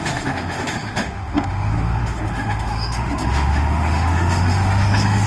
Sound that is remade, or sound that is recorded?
remade